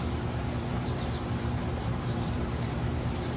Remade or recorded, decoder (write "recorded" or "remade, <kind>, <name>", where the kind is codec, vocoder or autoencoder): remade, vocoder, BigVGAN v2